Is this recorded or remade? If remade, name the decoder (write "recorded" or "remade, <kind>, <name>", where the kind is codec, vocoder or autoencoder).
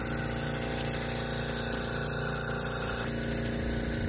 recorded